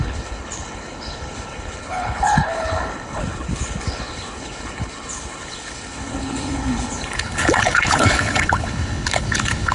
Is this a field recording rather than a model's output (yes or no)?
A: no